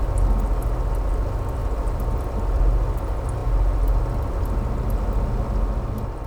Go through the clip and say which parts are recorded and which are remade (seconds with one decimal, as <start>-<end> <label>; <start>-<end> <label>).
0.0-1.6 recorded; 1.6-2.6 remade; 2.6-6.3 recorded